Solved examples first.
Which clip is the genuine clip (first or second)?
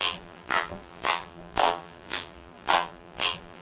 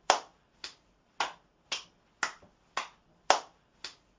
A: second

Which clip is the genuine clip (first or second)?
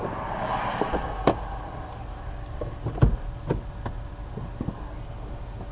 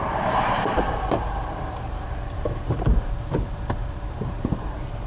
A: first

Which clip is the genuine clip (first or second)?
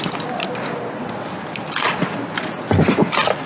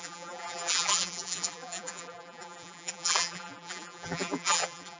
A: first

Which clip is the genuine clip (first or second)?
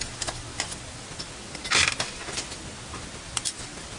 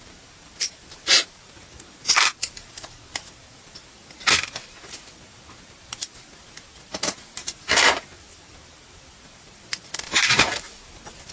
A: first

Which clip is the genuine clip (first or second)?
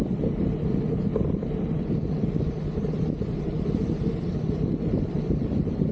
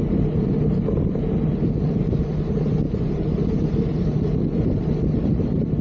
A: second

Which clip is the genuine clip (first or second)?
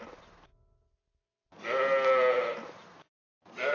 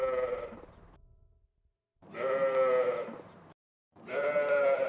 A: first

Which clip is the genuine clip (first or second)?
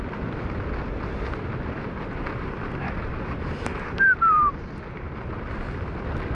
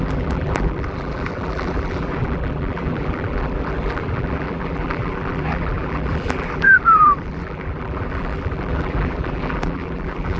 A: first